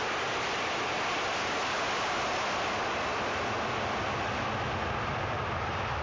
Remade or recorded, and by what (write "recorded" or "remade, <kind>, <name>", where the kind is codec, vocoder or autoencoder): recorded